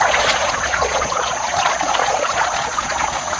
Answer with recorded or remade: remade